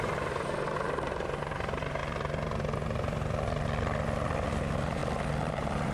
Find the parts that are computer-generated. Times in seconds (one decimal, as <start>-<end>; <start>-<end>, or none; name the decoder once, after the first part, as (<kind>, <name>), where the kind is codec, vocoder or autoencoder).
0.0-2.0 (vocoder, BigVGAN v2); 4.6-5.0; 5.5-5.9